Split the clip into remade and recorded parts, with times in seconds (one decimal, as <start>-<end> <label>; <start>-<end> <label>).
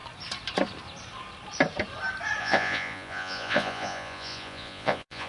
0.0-2.4 recorded; 2.4-5.3 remade